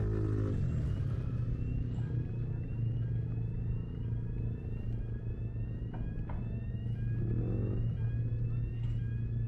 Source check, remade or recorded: recorded